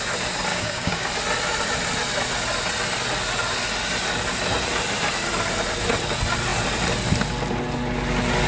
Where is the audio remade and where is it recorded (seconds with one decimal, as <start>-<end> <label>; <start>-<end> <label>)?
0.0-0.5 recorded; 0.5-1.1 remade; 1.1-8.5 recorded